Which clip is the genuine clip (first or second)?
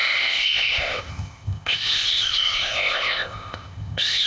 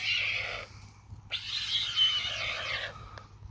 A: second